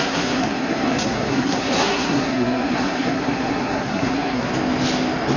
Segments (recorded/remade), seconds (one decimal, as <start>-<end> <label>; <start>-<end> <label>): 0.0-4.5 remade; 4.5-5.4 recorded